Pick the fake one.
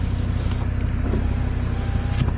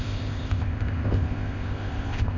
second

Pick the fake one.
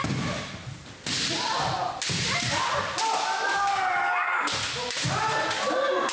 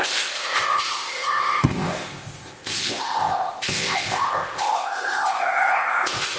second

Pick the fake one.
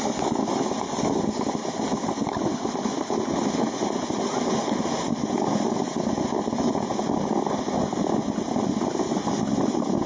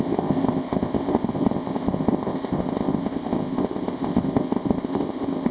second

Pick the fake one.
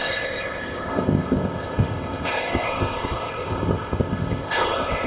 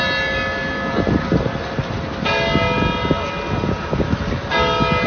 first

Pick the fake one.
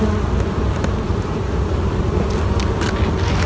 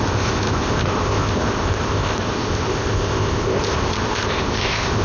second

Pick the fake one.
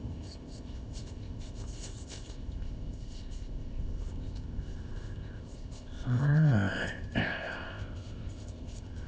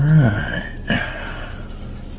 first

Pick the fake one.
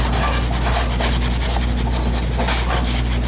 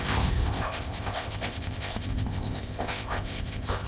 second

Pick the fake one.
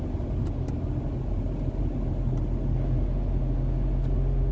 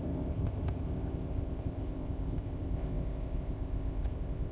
second